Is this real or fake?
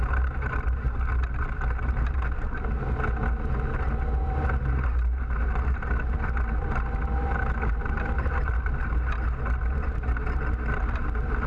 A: real